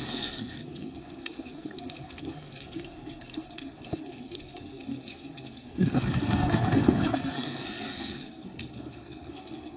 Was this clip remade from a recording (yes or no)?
yes